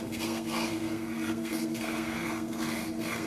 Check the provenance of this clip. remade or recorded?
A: remade